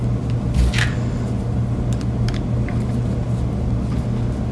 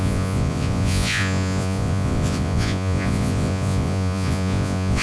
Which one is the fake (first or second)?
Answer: second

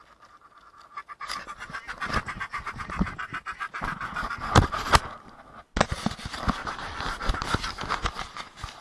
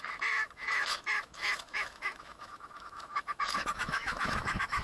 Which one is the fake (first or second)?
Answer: second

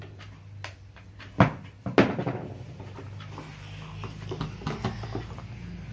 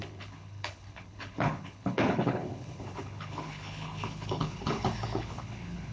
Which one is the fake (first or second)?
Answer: second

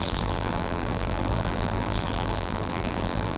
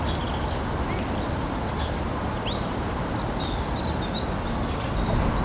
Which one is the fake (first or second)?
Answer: first